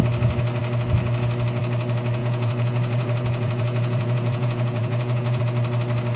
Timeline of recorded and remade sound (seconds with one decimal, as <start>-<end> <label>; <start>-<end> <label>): 0.0-2.2 recorded; 2.2-5.4 remade; 5.4-6.2 recorded